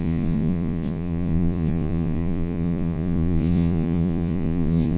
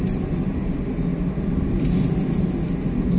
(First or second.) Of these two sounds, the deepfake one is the first